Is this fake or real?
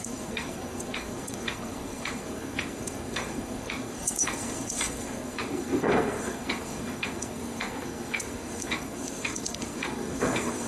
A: fake